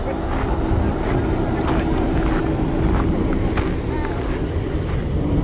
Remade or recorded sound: recorded